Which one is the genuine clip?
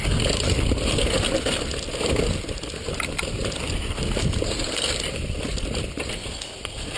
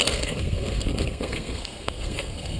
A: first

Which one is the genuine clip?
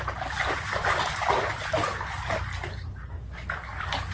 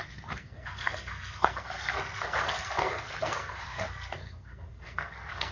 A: first